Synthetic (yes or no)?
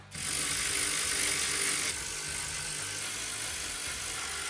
no